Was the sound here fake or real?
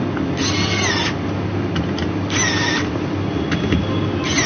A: real